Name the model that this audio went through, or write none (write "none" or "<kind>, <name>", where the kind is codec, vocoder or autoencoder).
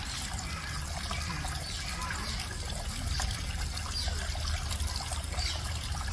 none